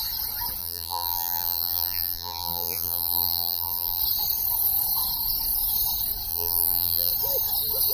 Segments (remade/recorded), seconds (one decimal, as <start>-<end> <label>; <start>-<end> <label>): 0.0-0.6 recorded; 0.6-4.0 remade; 4.0-6.3 recorded; 6.3-7.1 remade; 7.1-7.9 recorded